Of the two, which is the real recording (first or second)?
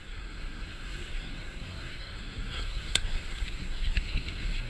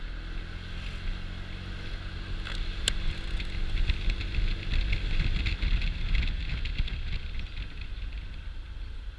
second